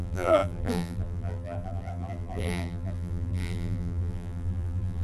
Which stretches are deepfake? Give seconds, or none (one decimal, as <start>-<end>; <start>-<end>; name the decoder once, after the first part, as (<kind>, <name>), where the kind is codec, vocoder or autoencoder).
0.0-5.0 (vocoder, BigVGAN v2)